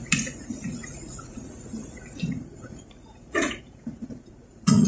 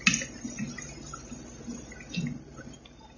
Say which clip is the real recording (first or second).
second